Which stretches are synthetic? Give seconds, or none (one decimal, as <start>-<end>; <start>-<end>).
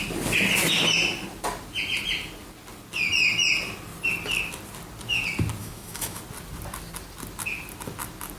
5.6-6.2